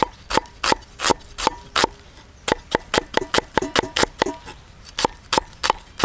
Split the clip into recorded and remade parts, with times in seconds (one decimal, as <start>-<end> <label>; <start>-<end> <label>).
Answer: 0.0-6.0 recorded